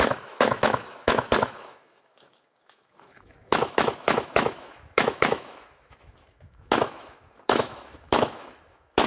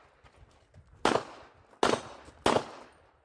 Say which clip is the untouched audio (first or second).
second